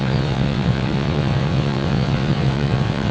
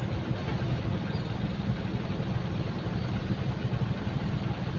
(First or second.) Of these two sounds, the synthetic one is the first